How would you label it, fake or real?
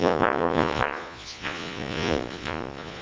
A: fake